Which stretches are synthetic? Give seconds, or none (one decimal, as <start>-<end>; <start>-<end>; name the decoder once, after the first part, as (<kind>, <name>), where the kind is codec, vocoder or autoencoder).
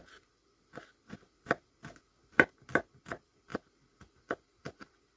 none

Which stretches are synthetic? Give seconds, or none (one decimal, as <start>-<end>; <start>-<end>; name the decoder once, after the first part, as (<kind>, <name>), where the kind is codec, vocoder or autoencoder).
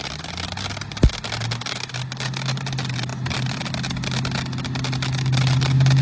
none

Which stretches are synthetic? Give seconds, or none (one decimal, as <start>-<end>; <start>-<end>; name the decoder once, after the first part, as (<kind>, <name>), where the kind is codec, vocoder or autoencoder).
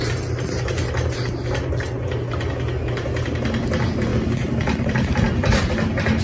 4.1-5.6 (vocoder, BigVGAN v2)